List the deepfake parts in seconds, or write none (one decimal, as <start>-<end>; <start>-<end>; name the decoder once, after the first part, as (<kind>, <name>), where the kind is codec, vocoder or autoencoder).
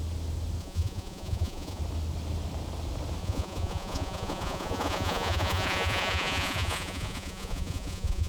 0.6-1.8 (vocoder, Vocos); 3.2-8.3